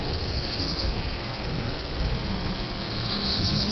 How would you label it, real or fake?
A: fake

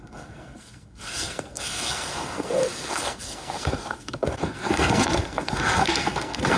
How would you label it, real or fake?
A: fake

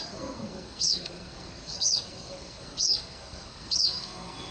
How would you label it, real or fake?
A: fake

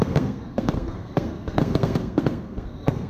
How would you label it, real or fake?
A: fake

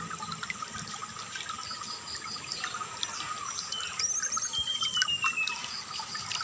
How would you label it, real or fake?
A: real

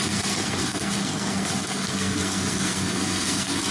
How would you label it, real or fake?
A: fake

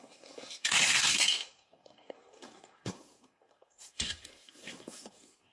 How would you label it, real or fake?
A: fake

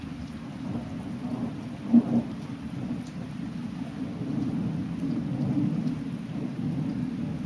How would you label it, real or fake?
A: real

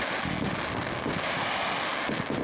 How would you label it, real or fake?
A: real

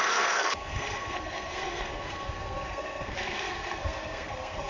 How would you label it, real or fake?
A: fake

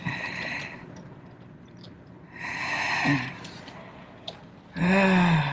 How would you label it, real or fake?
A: real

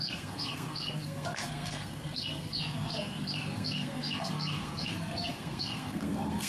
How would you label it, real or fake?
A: fake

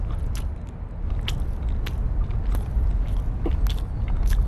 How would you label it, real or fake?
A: real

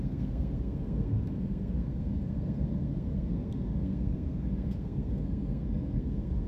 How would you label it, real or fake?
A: fake